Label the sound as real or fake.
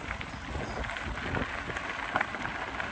real